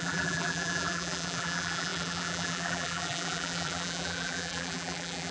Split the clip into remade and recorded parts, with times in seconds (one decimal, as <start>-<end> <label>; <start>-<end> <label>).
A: 0.0-5.3 remade